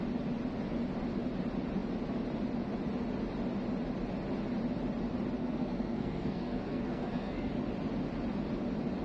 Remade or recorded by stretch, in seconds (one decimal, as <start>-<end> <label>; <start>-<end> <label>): 0.0-5.4 recorded; 5.4-7.5 remade; 7.5-9.0 recorded